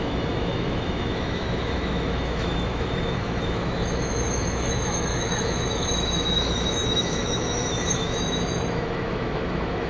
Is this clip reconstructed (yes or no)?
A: yes